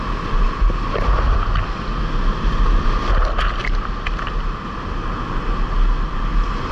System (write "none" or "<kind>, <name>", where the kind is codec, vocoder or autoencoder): none